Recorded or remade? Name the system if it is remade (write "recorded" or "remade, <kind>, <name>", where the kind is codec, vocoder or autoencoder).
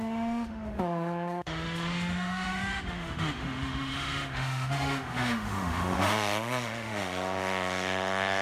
remade, autoencoder, DAC-VAE